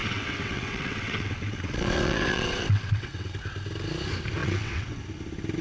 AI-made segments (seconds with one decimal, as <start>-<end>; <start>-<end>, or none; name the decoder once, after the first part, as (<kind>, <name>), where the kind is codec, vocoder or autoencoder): 0.0-3.3 (vocoder, WaveNeXt); 4.4-5.0